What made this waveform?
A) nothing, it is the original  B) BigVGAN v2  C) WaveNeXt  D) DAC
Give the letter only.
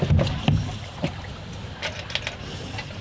B